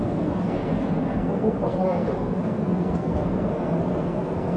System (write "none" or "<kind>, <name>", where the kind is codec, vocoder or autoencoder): codec, SNAC